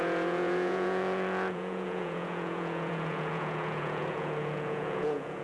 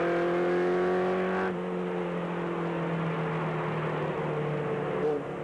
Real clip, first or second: second